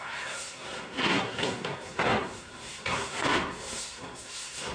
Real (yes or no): no